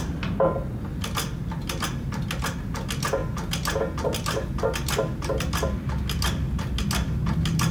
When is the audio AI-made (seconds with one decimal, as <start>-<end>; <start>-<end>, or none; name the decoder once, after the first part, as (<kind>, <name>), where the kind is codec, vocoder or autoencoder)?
none